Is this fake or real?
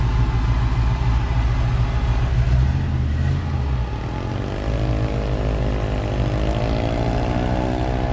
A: real